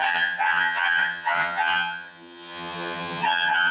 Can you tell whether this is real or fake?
fake